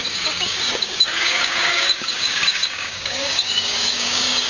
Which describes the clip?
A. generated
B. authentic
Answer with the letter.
A